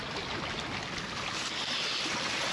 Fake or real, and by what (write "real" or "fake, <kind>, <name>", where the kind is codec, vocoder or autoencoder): real